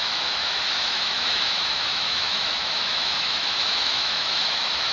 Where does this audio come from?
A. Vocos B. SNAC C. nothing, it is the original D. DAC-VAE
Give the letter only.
D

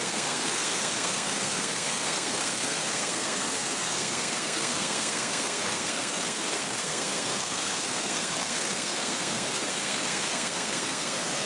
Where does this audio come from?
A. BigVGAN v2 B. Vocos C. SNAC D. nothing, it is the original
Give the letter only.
C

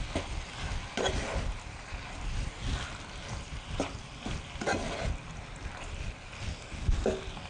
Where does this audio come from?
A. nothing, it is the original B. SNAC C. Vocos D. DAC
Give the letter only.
A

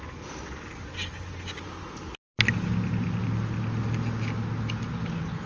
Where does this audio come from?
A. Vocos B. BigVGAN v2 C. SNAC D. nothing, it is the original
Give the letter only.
D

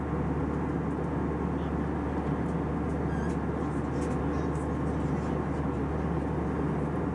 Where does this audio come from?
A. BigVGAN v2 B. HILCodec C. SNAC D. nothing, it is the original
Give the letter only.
D